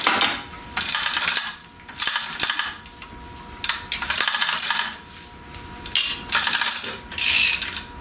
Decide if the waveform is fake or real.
real